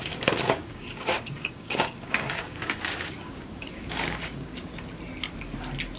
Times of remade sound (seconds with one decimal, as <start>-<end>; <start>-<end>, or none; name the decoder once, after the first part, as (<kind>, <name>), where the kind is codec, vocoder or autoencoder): 0.0-4.7 (codec, DAC)